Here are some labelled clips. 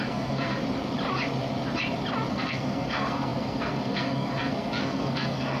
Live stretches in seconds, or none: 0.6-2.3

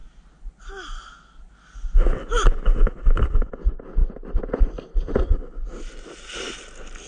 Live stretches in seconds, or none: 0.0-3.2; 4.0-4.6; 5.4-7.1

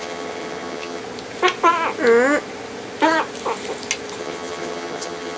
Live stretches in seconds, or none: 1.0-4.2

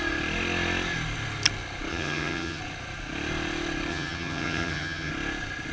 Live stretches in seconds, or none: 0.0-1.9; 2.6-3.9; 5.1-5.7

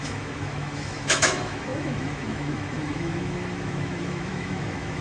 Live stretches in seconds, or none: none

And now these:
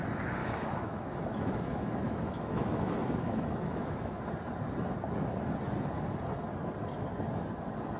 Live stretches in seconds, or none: 0.0-0.4; 4.2-8.0

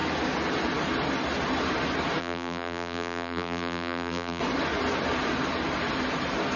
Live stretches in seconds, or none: 0.0-2.2; 4.4-6.6